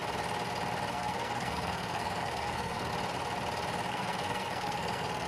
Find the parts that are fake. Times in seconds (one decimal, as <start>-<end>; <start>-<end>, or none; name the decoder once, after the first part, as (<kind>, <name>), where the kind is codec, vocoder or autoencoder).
0.9-2.9 (codec, SNAC); 3.9-5.3